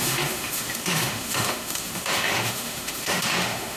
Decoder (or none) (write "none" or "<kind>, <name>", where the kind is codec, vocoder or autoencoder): autoencoder, DAC-VAE